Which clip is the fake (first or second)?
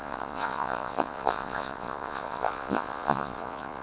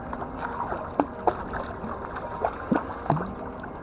first